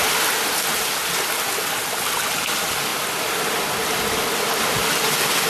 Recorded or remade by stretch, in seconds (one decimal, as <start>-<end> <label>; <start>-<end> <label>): 0.0-0.7 recorded; 0.7-1.4 remade; 1.4-5.5 recorded